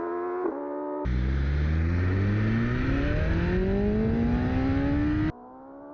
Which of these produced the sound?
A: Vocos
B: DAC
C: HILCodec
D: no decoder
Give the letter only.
D